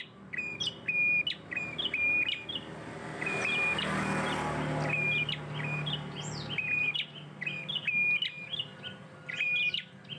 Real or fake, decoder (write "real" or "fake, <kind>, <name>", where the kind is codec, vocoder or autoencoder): real